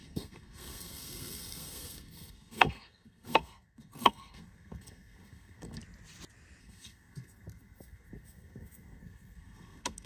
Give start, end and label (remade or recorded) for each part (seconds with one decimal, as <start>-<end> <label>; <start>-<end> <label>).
0.0-5.8 remade; 5.8-6.6 recorded; 6.6-10.1 remade